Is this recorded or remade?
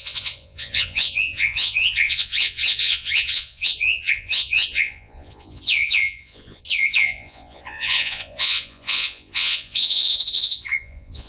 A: remade